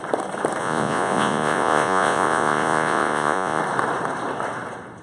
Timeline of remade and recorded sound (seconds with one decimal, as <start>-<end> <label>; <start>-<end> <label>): 0.0-0.6 recorded; 0.6-3.6 remade; 3.6-5.0 recorded

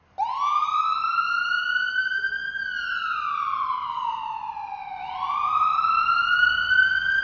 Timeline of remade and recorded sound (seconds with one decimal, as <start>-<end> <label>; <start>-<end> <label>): 0.0-7.2 recorded

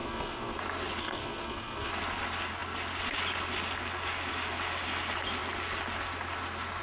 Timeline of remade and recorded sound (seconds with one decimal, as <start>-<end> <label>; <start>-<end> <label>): 0.0-0.6 remade; 0.6-1.0 recorded; 1.0-1.9 remade; 1.9-6.8 recorded

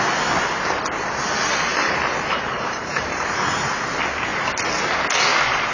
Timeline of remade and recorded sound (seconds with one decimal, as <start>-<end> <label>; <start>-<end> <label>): 0.0-1.7 recorded; 1.7-3.7 remade; 3.7-5.7 recorded